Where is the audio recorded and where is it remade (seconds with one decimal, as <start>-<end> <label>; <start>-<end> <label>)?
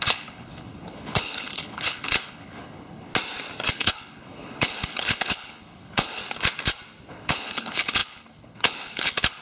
0.0-3.1 remade; 3.1-3.7 recorded; 3.7-6.2 remade; 6.2-7.1 recorded; 7.1-9.4 remade